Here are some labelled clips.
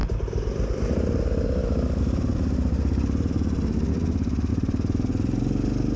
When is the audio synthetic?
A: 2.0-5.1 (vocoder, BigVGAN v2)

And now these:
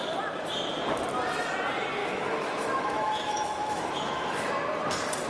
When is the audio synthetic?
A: 2.0-4.5 (autoencoder, DAC-VAE)

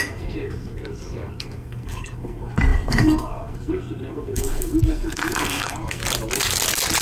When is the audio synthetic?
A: 0.0-6.0 (codec, SNAC)

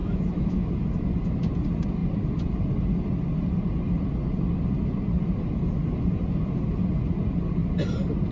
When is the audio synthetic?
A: 0.0-0.7 (autoencoder, DAC-VAE)

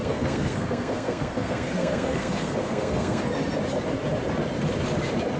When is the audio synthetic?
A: 0.0-3.2 (codec, SNAC)

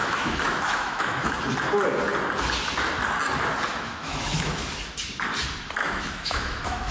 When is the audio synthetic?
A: 0.0-1.3 (autoencoder, DAC-VAE); 3.7-4.6; 5.8-6.9

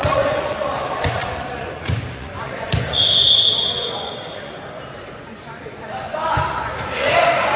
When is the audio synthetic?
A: 0.0-7.6 (vocoder, Vocos)

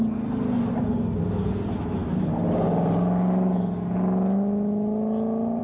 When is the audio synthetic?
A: none